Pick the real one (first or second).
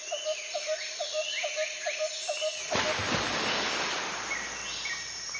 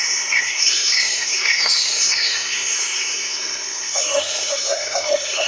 first